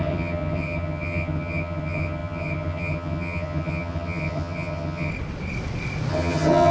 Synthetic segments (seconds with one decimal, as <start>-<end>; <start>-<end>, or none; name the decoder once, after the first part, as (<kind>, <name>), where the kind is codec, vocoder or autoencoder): 0.0-5.1 (vocoder, HiFi-GAN); 6.1-6.7